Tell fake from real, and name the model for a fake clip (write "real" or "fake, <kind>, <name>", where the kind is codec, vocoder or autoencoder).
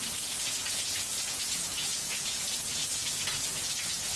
fake, vocoder, Vocos